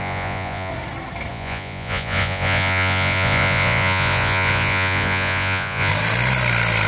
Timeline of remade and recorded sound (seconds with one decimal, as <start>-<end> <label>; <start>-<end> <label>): 0.0-0.7 remade; 0.7-1.3 recorded; 1.3-5.9 remade; 5.9-6.9 recorded